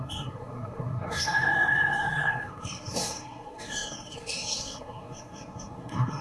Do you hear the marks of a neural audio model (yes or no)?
yes